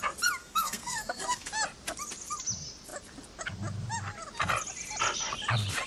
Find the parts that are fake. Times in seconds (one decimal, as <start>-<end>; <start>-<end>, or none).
0.4-1.5

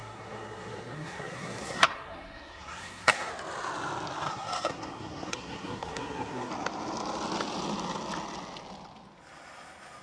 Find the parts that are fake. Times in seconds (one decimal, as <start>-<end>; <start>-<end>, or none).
0.0-3.3; 4.3-6.5

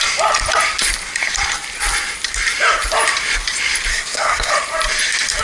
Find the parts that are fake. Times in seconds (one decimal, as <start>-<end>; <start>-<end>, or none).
3.9-4.5

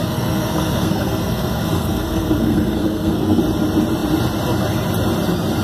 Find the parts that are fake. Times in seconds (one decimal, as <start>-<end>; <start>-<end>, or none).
0.0-3.4

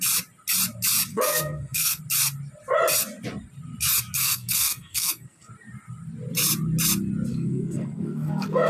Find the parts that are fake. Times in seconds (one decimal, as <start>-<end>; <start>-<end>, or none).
1.1-2.0; 4.2-5.5; 7.3-8.7